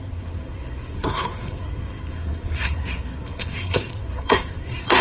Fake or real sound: fake